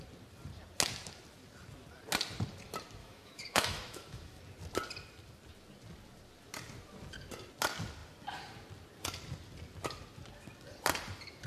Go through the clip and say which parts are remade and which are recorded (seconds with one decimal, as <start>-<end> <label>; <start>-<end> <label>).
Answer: 0.0-3.0 recorded; 3.0-4.4 remade; 4.4-11.5 recorded